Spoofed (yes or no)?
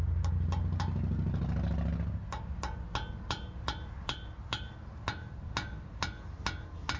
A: no